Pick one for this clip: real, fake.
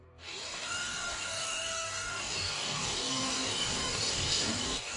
fake